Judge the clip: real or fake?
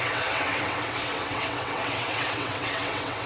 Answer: fake